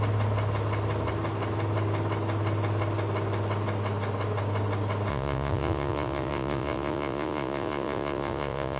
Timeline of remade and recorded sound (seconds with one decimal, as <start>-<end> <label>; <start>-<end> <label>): 0.0-5.1 recorded; 5.1-8.8 remade

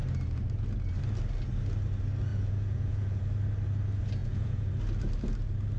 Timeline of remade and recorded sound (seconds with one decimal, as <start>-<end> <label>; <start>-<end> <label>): 0.0-2.3 recorded; 2.3-3.2 remade; 3.2-4.2 recorded; 4.2-4.7 remade; 4.7-5.8 recorded

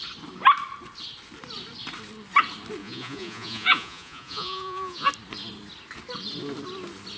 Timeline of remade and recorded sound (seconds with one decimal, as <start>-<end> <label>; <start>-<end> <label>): 0.0-2.8 recorded; 2.8-5.1 remade; 5.1-7.2 recorded

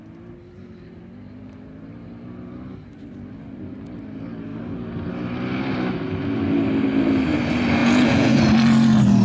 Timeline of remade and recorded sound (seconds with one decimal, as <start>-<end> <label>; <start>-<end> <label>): 0.0-7.8 recorded; 7.8-8.4 remade; 8.4-9.2 recorded

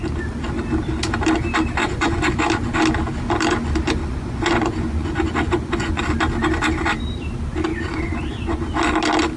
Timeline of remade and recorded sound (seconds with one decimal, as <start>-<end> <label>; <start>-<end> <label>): 0.0-1.8 recorded; 1.8-2.3 remade; 2.3-4.0 recorded; 4.0-6.0 remade; 6.0-7.7 recorded; 7.7-8.7 remade; 8.7-9.4 recorded

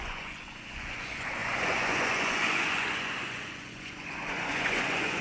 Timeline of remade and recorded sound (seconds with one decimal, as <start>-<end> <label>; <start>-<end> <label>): 0.0-5.2 remade

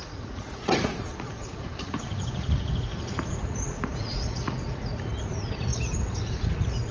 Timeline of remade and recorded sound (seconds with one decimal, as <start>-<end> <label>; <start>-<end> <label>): 0.0-5.7 remade; 5.7-6.2 recorded; 6.2-6.9 remade